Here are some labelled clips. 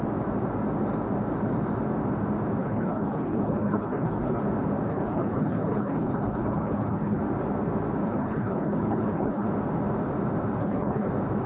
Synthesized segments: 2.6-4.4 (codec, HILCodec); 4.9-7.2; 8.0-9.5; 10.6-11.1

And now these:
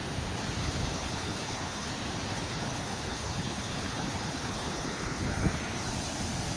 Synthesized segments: 0.6-1.9 (codec, HILCodec); 2.3-5.6

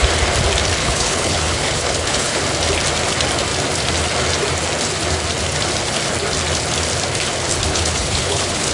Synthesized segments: 0.8-2.4 (codec, HILCodec); 7.7-8.7

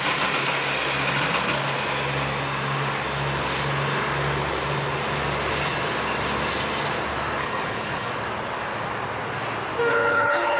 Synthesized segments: 7.4-8.1 (codec, HILCodec); 9.9-10.6

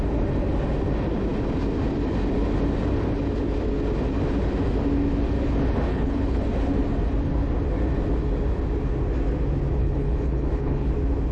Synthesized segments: 5.9-6.4 (codec, HILCodec); 9.8-10.9